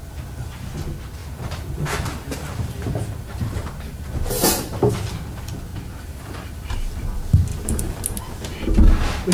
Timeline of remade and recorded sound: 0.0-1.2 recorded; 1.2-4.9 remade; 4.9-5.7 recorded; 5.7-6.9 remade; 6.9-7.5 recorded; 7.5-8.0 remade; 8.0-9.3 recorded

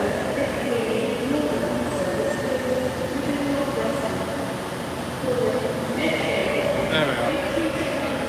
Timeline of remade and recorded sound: 0.0-1.1 remade; 1.1-5.5 recorded; 5.5-8.3 remade

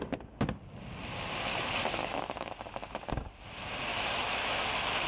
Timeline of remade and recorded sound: 0.0-2.0 recorded; 2.0-2.5 remade; 2.5-3.9 recorded; 3.9-4.6 remade; 4.6-5.1 recorded